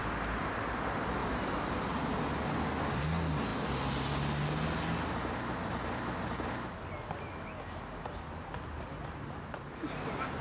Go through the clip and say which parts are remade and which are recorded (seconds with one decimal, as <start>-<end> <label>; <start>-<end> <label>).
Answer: 0.0-0.7 remade; 0.7-1.2 recorded; 1.2-1.8 remade; 1.8-10.4 recorded